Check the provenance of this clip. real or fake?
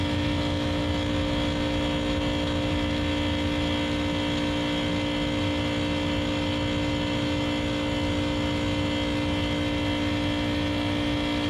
real